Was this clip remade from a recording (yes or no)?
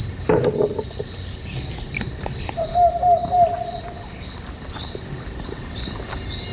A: no